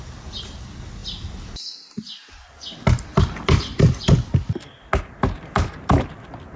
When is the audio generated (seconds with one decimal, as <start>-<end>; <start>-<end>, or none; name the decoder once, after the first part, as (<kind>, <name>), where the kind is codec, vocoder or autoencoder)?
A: none